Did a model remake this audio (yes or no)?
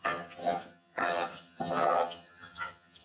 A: yes